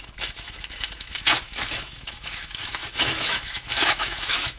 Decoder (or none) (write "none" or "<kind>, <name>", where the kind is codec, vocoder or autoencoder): autoencoder, DAC-VAE